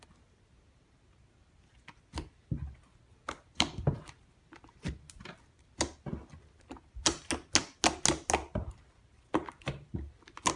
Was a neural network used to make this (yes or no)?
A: no